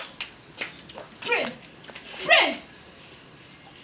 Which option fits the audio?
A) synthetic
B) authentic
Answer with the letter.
B